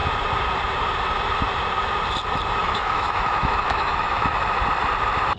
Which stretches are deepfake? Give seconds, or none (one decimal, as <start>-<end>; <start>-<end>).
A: 2.6-4.4